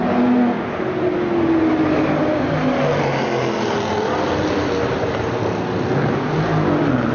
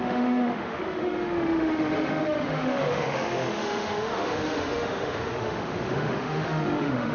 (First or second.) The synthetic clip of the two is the second